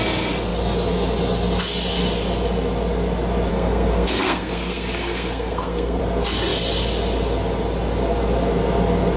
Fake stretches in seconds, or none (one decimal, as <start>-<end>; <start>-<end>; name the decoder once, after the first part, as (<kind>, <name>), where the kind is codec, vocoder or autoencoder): 3.5-6.0 (codec, SNAC)